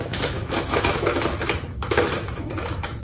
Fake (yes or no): yes